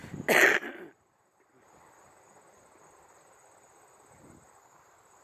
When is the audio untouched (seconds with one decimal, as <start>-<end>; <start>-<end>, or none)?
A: 0.0-5.2